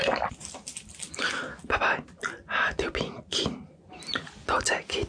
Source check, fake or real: real